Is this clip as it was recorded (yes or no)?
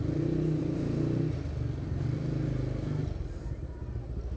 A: yes